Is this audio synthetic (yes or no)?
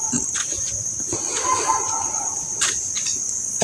no